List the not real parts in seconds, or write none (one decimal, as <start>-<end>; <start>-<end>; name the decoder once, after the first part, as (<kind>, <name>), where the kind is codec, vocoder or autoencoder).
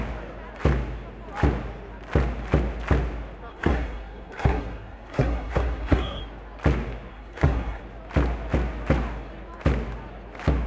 3.5-6.2 (codec, SNAC); 7.1-7.8